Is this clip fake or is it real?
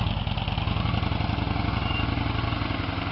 real